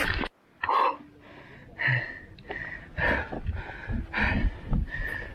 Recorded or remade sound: recorded